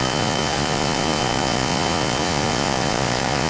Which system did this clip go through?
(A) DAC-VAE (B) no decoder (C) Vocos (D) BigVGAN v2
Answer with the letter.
C